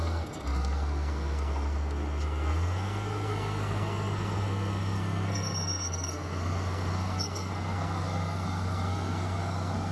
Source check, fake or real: fake